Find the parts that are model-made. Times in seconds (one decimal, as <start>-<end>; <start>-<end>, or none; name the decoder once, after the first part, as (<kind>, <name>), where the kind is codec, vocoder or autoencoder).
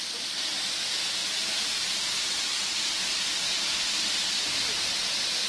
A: none